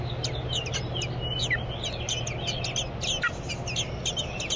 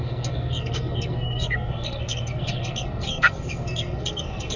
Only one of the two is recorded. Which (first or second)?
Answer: first